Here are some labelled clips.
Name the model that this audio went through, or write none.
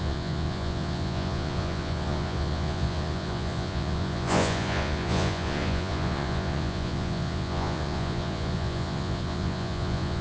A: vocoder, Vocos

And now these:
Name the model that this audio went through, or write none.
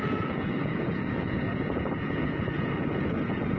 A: vocoder, Vocos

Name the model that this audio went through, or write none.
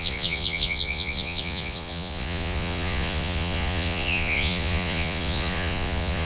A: vocoder, Vocos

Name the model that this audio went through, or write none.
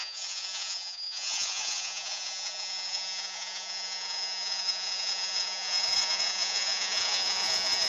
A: vocoder, Vocos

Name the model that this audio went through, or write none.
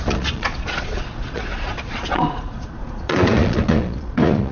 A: vocoder, Vocos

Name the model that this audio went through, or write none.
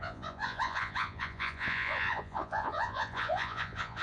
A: vocoder, Vocos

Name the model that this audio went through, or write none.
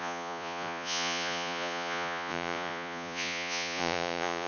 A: vocoder, Vocos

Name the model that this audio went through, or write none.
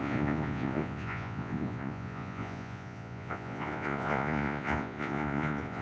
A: vocoder, Vocos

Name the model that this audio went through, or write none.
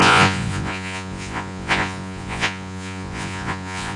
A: vocoder, Vocos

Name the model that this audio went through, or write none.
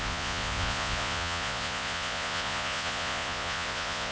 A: vocoder, Vocos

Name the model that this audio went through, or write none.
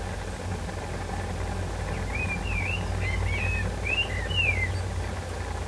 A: none